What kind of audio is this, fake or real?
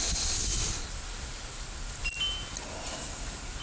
real